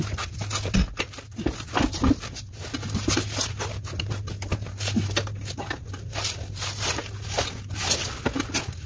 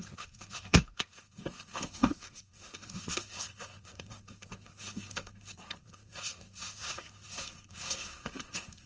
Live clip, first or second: first